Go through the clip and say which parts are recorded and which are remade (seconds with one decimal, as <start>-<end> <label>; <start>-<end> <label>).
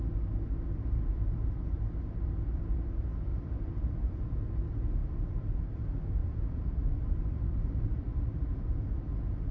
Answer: 0.0-3.3 recorded; 3.3-3.8 remade; 3.8-5.0 recorded; 5.0-5.8 remade; 5.8-6.2 recorded; 6.2-8.7 remade; 8.7-9.5 recorded